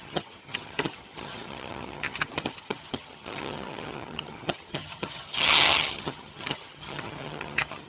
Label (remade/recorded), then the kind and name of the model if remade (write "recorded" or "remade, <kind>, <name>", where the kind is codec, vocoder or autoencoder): remade, vocoder, HiFi-GAN